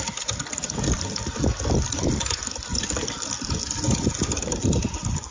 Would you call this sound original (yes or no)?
no